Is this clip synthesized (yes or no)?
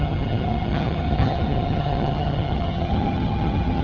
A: yes